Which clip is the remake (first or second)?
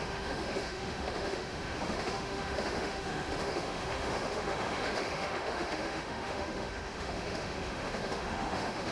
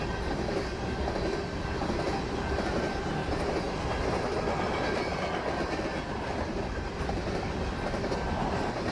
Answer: first